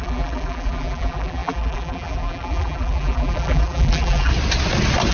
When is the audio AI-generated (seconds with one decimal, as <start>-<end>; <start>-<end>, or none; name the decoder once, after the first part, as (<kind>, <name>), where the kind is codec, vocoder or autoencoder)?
0.0-4.3 (vocoder, BigVGAN v2)